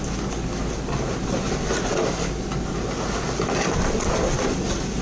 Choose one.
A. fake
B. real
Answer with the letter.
B